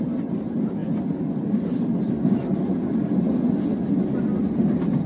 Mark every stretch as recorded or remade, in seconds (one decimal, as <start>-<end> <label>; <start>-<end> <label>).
0.0-5.1 recorded